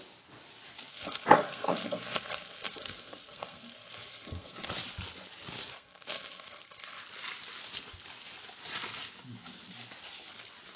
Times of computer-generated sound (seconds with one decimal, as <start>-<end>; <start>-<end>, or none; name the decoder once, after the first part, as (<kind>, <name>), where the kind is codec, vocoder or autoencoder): 0.9-4.7 (codec, SNAC); 5.7-7.0